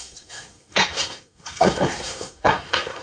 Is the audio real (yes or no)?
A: no